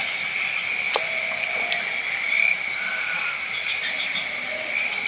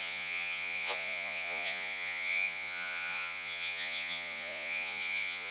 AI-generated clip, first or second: second